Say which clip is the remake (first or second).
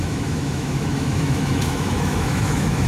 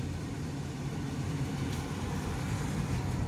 first